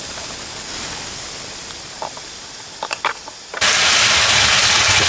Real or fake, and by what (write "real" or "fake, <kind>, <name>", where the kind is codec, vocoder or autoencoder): real